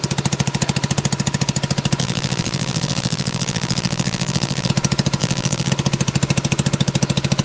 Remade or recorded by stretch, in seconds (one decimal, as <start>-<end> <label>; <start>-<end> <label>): 0.0-2.0 recorded; 2.0-4.7 remade; 4.7-5.2 recorded; 5.2-5.7 remade; 5.7-7.4 recorded